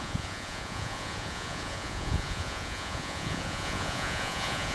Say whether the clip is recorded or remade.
remade